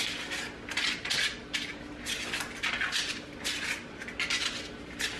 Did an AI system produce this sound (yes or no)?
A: no